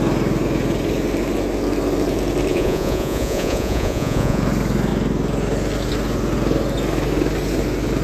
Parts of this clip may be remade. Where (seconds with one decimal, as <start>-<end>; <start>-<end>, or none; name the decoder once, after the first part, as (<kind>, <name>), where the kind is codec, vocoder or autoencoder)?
2.5-4.4 (vocoder, Vocos)